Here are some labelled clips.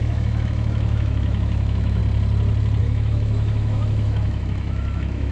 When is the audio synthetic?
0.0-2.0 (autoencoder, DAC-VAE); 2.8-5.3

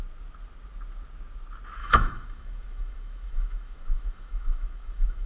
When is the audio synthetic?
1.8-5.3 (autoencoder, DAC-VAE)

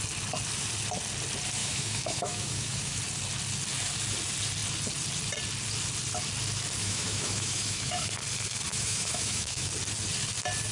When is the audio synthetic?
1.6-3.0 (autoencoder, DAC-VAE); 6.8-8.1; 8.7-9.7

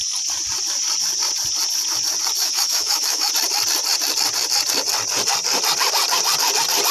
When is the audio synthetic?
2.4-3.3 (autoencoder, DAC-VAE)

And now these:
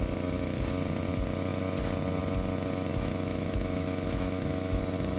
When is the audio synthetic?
2.9-4.8 (autoencoder, DAC-VAE)

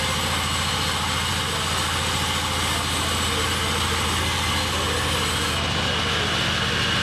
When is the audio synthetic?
none

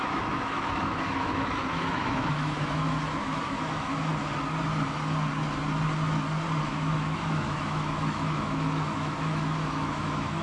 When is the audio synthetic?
0.0-4.1 (autoencoder, DAC-VAE); 6.6-10.4